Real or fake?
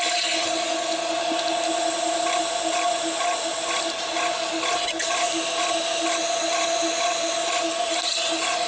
real